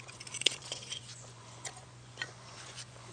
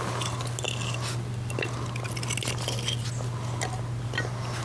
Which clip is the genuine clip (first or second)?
second